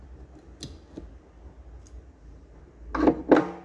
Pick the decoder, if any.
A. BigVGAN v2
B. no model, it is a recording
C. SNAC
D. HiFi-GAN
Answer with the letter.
B